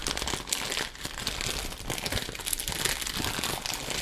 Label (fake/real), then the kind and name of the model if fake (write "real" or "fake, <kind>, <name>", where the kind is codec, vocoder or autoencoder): real